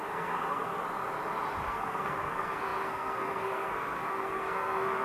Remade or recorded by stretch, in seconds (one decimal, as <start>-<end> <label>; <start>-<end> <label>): 0.0-0.7 remade; 0.7-1.7 recorded; 1.7-5.0 remade